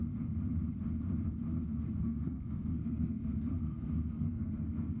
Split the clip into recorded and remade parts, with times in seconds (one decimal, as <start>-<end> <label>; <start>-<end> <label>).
0.0-2.0 recorded; 2.0-5.0 remade